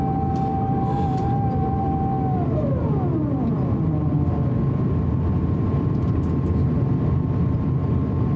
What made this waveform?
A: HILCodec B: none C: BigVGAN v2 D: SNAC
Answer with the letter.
B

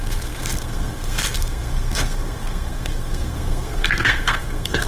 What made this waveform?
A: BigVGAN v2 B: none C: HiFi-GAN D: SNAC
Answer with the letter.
D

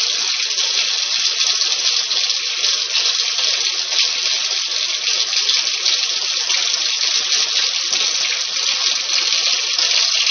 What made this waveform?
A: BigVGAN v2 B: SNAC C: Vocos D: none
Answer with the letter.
D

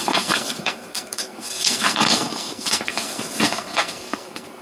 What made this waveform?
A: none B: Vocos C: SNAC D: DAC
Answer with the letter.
C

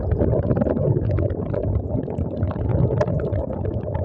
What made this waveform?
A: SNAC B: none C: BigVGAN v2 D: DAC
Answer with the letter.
B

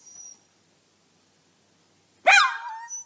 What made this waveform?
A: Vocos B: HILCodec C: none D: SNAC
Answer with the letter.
C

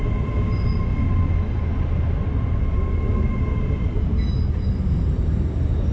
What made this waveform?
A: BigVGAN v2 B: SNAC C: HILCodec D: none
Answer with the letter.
D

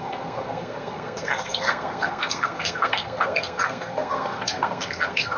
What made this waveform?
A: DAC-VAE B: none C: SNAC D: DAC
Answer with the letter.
C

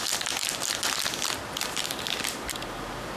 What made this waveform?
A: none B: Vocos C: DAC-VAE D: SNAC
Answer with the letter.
A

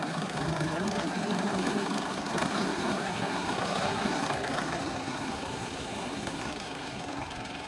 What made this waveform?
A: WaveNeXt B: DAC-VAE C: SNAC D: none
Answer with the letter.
C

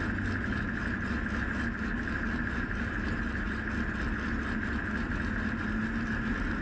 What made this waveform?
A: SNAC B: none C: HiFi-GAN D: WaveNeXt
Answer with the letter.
B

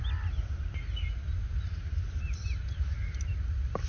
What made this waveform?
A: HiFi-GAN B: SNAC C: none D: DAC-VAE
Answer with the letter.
C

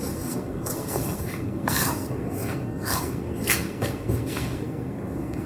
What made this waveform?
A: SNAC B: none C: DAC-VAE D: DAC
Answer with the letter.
A